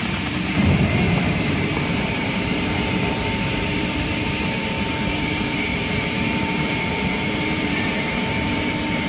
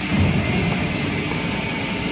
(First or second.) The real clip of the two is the second